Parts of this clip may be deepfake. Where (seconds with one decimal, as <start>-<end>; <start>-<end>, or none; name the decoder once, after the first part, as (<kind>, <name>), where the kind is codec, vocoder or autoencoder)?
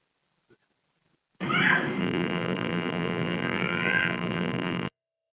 2.0-5.3 (vocoder, BigVGAN v2)